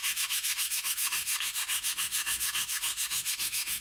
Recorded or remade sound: remade